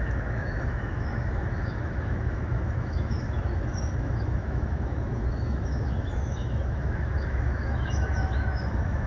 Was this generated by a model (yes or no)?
yes